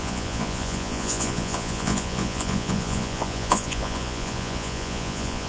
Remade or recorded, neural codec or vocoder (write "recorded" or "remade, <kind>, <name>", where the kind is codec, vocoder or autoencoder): remade, vocoder, Vocos